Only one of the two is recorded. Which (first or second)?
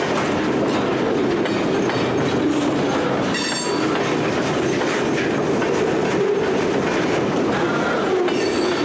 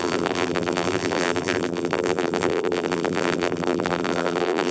first